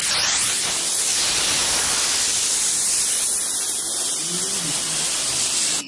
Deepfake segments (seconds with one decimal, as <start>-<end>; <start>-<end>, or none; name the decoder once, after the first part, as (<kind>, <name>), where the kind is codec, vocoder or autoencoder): 0.0-0.7 (vocoder, BigVGAN v2); 1.1-3.0